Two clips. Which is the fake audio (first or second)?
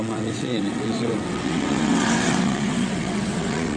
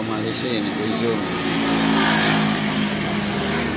first